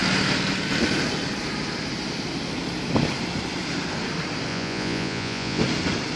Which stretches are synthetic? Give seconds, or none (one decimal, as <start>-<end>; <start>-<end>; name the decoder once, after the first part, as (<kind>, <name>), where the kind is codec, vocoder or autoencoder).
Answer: 4.5-5.6 (vocoder, Vocos)